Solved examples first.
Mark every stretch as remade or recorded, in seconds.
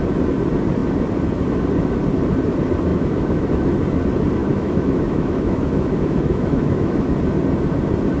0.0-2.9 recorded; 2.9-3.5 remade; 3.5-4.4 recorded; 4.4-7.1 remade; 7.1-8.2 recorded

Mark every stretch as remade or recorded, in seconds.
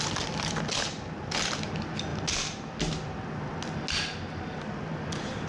0.0-5.5 recorded